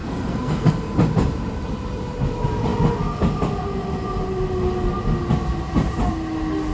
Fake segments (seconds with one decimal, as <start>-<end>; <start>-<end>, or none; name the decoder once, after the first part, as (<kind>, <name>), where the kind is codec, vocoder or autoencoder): 0.0-0.7 (codec, SNAC)